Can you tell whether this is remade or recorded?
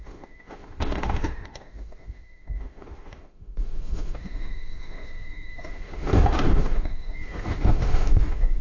remade